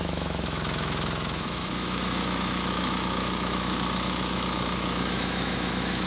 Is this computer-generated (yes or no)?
yes